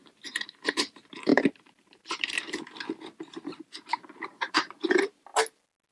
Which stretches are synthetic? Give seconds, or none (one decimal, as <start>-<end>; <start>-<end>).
0.0-5.3